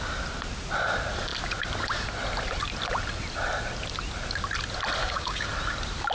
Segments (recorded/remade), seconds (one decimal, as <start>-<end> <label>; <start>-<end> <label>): 0.0-5.0 recorded; 5.0-5.5 remade; 5.5-6.1 recorded